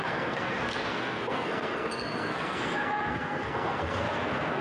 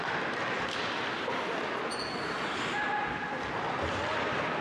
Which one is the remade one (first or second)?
first